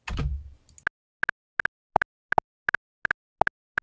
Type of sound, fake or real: real